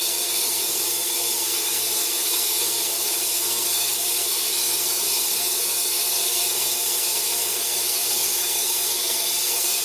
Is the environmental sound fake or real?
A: fake